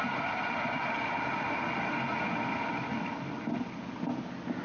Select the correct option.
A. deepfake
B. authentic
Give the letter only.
B